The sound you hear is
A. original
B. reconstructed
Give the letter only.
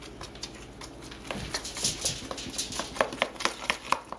A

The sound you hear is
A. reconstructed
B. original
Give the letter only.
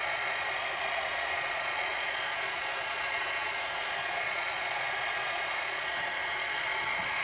A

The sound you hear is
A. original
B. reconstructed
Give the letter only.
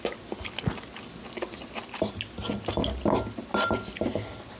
A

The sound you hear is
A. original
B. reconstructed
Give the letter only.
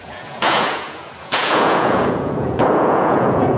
B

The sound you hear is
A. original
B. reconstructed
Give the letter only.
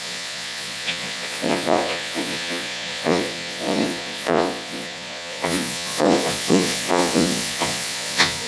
B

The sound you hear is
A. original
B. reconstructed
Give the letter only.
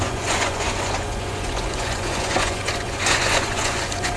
B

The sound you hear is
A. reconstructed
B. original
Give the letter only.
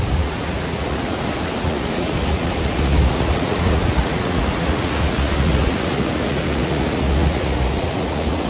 A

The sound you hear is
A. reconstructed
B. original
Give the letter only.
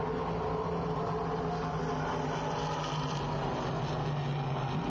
B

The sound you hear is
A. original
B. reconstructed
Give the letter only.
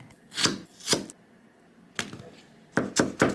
A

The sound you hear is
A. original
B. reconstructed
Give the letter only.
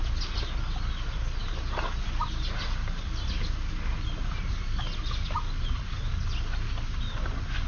A